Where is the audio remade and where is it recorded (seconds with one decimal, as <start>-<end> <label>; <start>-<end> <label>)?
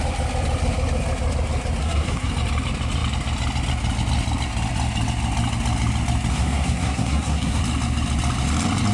0.0-1.8 recorded; 1.8-2.3 remade; 2.3-6.3 recorded; 6.3-7.6 remade; 7.6-8.9 recorded